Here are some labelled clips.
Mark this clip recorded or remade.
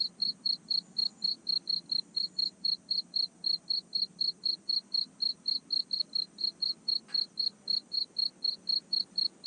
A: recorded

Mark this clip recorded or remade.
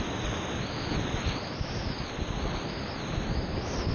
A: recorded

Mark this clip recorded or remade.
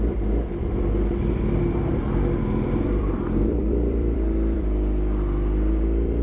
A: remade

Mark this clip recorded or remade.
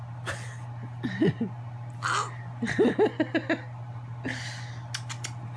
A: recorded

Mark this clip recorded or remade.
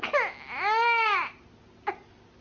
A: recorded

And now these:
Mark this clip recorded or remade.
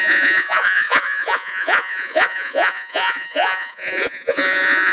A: remade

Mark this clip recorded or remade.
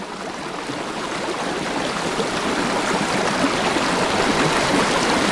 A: recorded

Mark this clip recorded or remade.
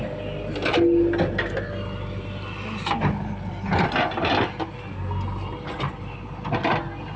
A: recorded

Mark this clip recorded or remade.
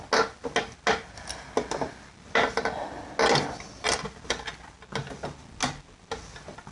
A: recorded